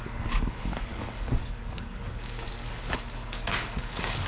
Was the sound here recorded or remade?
remade